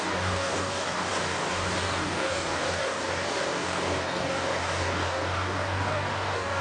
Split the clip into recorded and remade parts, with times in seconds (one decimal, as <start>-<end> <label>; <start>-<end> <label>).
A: 0.0-6.6 remade